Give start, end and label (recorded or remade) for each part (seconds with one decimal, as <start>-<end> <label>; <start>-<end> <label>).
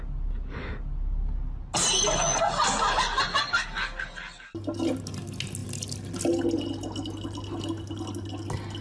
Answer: 0.0-8.8 recorded